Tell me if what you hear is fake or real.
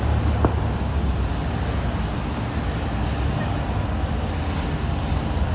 real